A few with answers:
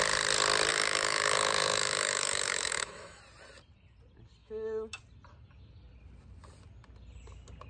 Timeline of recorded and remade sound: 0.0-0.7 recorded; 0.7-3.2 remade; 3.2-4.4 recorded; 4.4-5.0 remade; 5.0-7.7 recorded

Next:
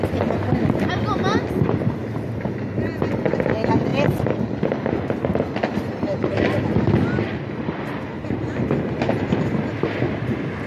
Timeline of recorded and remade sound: 0.0-10.7 recorded

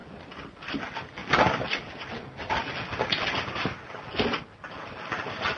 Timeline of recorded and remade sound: 0.0-5.6 recorded

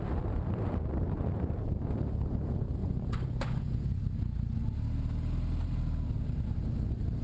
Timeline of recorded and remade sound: 0.0-2.8 recorded; 2.8-4.0 remade; 4.0-7.2 recorded

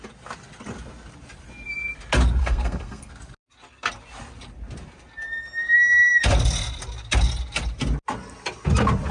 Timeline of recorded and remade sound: 0.0-2.4 recorded; 2.4-3.1 remade; 3.1-9.1 recorded

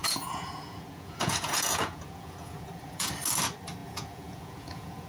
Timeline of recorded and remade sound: 0.0-3.1 remade; 3.1-3.8 recorded; 3.8-5.1 remade

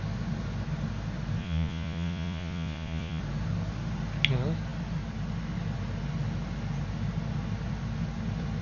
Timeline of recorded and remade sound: 0.0-1.4 recorded; 1.4-3.2 remade; 3.2-8.6 recorded

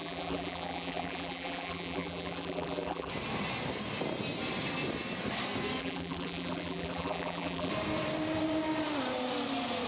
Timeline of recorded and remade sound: 0.0-3.1 remade; 3.1-5.8 recorded; 5.8-7.7 remade; 7.7-9.9 recorded